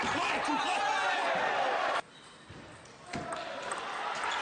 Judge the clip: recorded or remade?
recorded